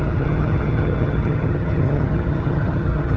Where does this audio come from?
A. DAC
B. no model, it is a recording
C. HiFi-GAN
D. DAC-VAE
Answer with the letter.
C